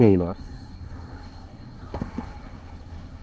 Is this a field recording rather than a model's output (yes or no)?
no